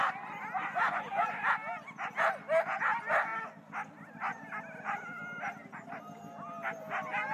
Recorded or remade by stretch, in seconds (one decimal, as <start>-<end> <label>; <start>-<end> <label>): 0.0-7.3 recorded